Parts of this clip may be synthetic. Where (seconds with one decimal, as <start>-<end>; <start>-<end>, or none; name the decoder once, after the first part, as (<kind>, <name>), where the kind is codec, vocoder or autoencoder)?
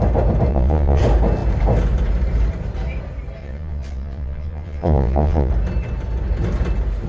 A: 0.5-1.0 (vocoder, Vocos); 3.4-5.5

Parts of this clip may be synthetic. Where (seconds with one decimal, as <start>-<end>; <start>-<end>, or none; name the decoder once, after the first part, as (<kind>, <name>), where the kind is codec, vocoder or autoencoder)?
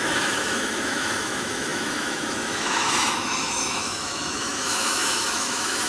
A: 0.0-5.9 (autoencoder, DAC-VAE)